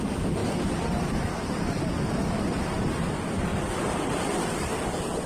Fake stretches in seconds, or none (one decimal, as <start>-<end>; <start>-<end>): none